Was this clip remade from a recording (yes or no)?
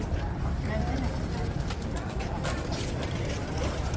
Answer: no